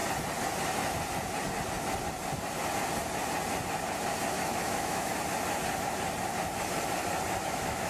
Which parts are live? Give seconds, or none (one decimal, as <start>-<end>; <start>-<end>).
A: 0.0-4.3; 5.1-7.4